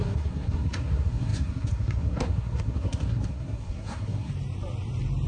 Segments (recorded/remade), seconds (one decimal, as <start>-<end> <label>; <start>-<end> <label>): 0.0-4.3 remade; 4.3-5.3 recorded